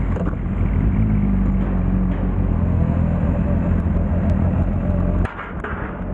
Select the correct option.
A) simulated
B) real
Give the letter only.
B